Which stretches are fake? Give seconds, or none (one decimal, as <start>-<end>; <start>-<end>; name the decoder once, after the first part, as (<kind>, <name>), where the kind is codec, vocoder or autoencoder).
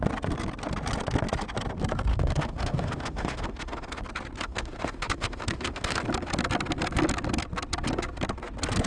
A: 2.1-4.0 (autoencoder, DAC-VAE); 4.4-6.0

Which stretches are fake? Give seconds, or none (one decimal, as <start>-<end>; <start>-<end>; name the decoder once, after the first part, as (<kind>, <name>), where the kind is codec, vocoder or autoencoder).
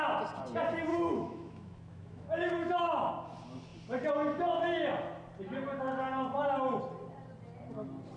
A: 0.9-3.1 (autoencoder, DAC-VAE)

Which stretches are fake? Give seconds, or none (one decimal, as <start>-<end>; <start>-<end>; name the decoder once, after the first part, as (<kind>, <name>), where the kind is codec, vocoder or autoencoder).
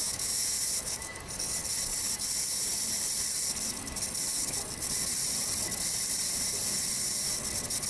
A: 0.0-1.2 (autoencoder, DAC-VAE)